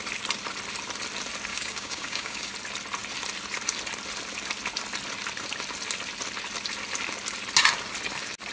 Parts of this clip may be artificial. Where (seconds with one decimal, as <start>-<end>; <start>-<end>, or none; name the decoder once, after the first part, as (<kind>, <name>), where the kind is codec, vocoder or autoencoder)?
1.5-2.5 (codec, DAC)